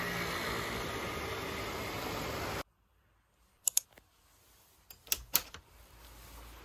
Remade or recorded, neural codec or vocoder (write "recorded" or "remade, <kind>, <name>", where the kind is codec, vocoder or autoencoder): recorded